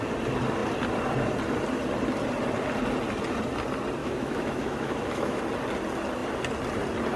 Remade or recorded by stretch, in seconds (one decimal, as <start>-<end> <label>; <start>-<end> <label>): 0.0-4.0 recorded; 4.0-5.4 remade; 5.4-7.2 recorded